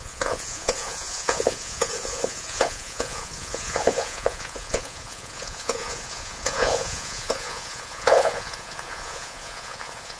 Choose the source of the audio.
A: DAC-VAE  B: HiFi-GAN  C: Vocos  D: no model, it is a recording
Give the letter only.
C